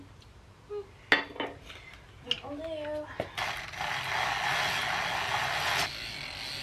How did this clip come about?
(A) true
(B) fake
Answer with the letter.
A